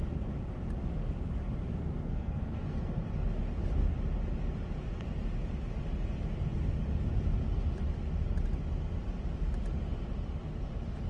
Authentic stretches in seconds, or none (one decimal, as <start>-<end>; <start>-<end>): 0.0-1.7; 3.0-11.1